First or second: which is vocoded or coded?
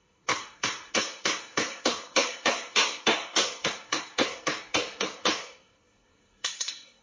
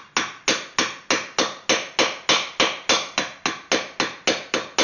first